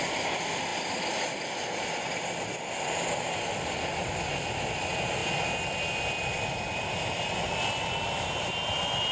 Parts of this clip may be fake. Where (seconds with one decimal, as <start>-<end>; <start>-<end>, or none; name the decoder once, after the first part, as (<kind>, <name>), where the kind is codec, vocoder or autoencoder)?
none